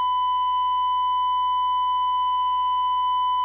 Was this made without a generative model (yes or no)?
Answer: yes